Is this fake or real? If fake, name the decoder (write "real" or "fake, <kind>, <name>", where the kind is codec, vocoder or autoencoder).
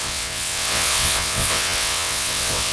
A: fake, vocoder, WaveNeXt